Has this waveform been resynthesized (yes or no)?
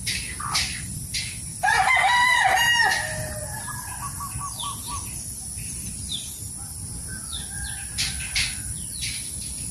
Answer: no